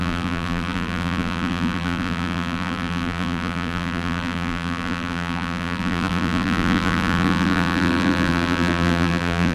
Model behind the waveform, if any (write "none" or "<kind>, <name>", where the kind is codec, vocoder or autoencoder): vocoder, BigVGAN v2